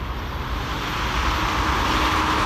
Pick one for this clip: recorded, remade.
recorded